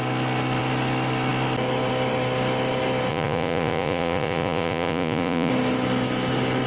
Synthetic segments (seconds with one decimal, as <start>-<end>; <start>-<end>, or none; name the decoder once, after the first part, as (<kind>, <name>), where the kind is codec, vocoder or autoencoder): 3.1-5.5 (vocoder, Vocos)